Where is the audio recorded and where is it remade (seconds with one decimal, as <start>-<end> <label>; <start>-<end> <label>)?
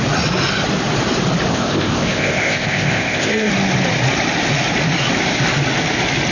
0.0-1.5 recorded; 1.5-3.5 remade; 3.5-6.3 recorded